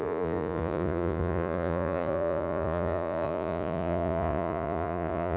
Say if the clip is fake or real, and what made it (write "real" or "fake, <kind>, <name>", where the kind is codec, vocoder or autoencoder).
fake, vocoder, Vocos